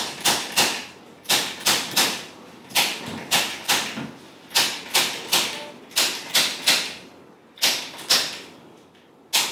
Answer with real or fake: real